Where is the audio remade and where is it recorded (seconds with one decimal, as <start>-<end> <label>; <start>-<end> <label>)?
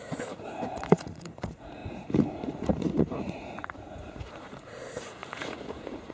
0.0-6.1 remade